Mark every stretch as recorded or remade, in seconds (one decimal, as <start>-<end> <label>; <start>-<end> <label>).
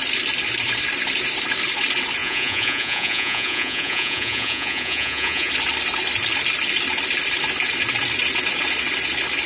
0.0-2.2 recorded; 2.2-5.5 remade; 5.5-9.5 recorded